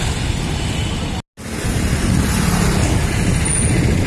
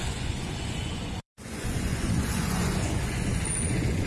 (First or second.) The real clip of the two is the first